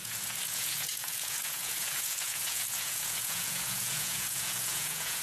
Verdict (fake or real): fake